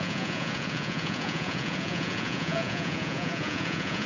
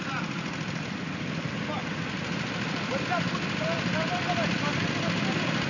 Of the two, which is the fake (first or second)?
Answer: first